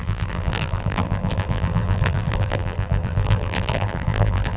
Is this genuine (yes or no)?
no